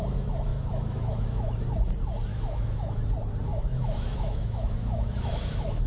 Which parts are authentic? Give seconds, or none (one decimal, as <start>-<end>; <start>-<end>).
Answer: 0.0-0.5; 1.6-2.3; 3.0-3.5